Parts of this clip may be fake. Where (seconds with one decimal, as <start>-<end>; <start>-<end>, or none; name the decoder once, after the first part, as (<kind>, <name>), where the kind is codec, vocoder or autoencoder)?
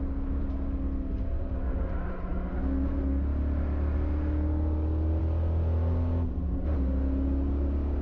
none